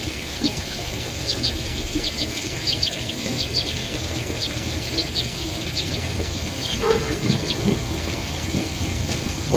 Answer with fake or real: fake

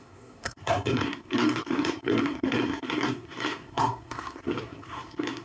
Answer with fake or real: fake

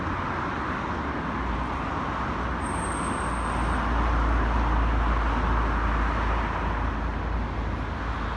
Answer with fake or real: real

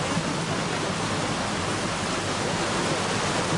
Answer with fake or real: real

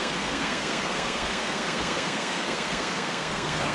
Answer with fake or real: fake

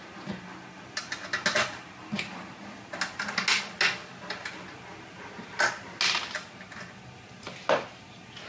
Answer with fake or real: real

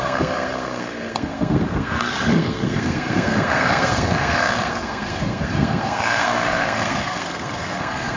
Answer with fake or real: fake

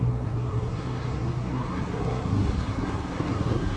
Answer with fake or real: fake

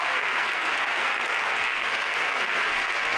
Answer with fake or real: fake